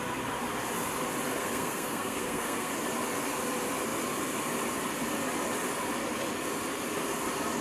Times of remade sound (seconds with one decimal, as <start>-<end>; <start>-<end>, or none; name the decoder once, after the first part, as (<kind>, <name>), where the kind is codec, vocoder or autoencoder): 1.4-2.7 (codec, SNAC)